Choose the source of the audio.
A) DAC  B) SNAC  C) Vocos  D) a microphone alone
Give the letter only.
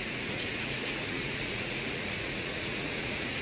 C